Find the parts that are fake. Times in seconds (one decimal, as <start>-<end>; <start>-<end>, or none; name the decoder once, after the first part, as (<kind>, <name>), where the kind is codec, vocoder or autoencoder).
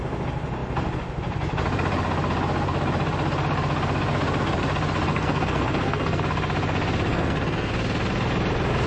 5.1-6.2 (codec, SNAC); 7.1-7.7